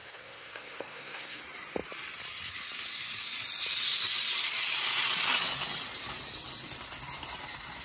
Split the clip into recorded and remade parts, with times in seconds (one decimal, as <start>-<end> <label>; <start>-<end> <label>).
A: 0.0-1.4 remade; 1.4-7.8 recorded